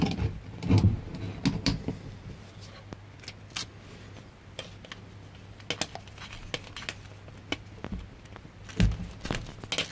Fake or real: real